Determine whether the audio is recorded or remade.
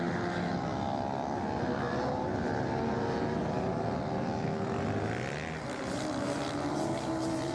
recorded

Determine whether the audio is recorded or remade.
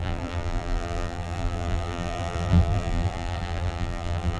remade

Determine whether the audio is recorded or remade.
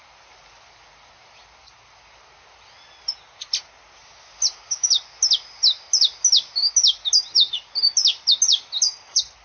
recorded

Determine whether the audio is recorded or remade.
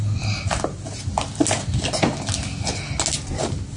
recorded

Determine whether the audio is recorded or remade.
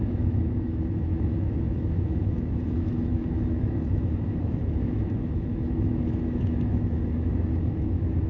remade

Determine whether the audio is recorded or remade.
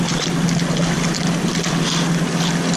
recorded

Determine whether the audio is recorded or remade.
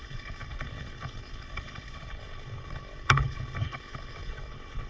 remade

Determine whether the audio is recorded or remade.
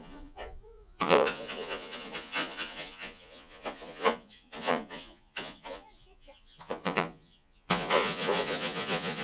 remade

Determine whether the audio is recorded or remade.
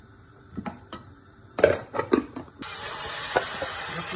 recorded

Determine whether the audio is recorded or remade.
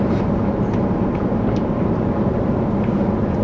remade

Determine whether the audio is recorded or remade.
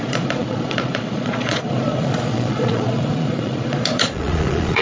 remade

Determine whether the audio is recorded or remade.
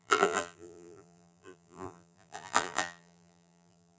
remade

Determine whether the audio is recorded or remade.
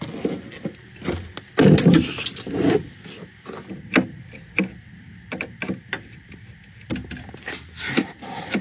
recorded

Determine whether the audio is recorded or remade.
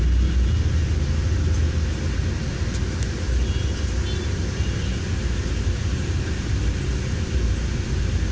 recorded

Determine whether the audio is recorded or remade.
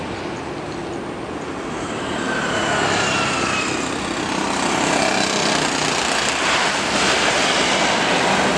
recorded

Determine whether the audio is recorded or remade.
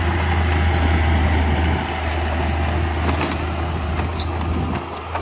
recorded